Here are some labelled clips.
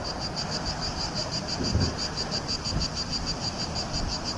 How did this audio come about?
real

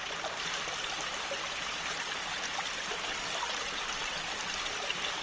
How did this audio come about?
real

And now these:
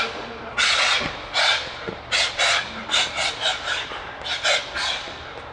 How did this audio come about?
real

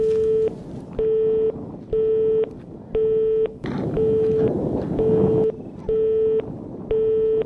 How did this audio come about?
real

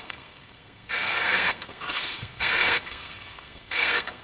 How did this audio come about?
fake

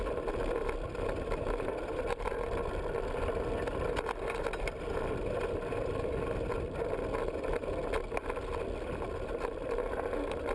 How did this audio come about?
real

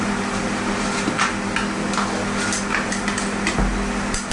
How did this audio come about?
real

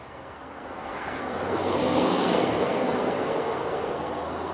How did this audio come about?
fake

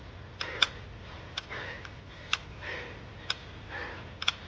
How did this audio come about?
real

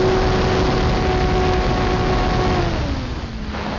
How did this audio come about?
real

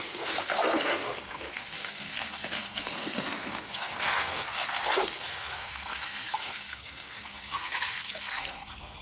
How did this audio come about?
fake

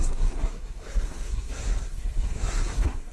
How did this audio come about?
fake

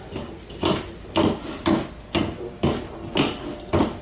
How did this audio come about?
real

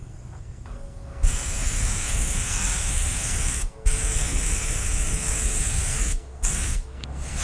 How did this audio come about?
fake